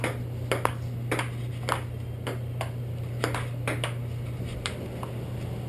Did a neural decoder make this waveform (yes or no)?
no